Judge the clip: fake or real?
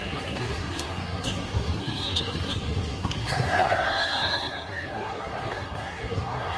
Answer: fake